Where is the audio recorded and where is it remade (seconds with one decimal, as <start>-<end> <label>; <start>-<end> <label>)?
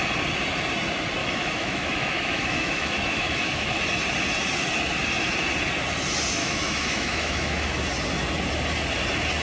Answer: 0.0-1.2 recorded; 1.2-3.8 remade; 3.8-6.4 recorded; 6.4-7.8 remade; 7.8-9.4 recorded